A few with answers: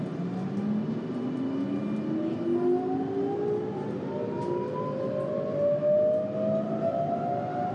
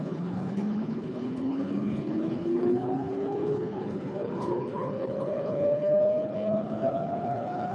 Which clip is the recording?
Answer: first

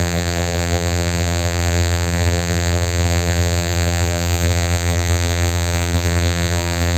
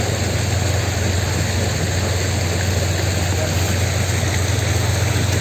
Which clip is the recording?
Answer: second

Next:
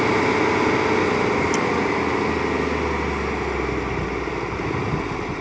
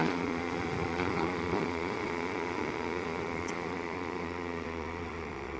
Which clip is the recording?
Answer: first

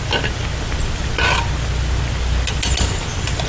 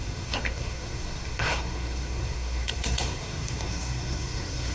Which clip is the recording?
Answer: first